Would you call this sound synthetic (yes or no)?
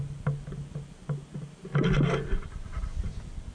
no